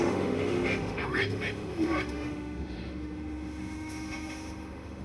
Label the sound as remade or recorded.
remade